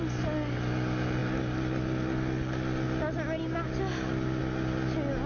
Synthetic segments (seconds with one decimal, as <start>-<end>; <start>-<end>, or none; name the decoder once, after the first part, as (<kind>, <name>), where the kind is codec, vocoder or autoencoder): none